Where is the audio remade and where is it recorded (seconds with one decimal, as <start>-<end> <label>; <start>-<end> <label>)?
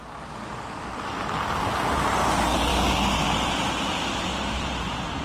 0.0-4.1 recorded; 4.1-5.2 remade